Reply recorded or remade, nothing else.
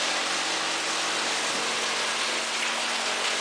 recorded